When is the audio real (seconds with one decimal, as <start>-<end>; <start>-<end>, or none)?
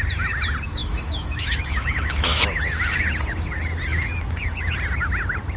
0.0-0.8; 3.0-3.9; 4.6-5.6